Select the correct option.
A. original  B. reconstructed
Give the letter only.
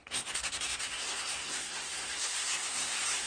B